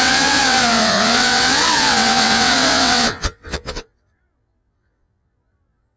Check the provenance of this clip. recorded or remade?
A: remade